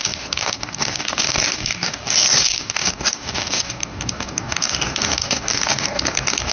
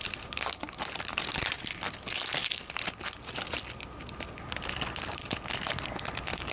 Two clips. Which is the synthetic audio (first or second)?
first